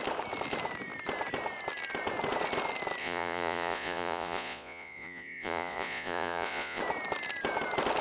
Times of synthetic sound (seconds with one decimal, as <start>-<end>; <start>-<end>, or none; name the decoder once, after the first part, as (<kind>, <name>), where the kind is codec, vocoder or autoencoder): 3.0-6.8 (vocoder, Vocos)